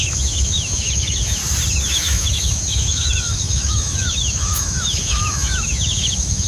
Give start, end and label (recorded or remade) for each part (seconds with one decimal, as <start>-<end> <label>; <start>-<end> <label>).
0.0-1.4 remade; 1.4-1.9 recorded; 1.9-6.5 remade